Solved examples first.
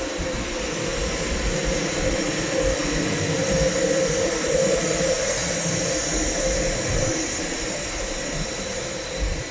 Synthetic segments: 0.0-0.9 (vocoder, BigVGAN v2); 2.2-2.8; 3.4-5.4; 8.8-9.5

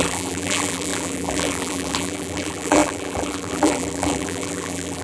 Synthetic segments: 0.0-5.0 (vocoder, BigVGAN v2)

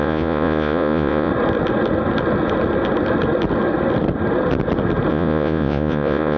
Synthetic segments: 0.0-1.3 (vocoder, Vocos); 5.1-6.4